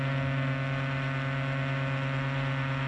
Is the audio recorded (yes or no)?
yes